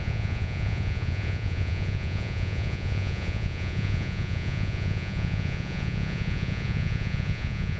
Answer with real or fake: fake